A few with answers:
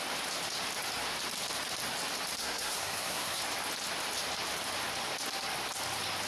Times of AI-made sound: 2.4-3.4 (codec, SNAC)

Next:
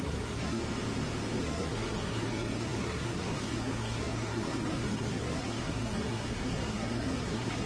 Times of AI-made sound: 0.0-0.6 (codec, SNAC); 1.4-7.7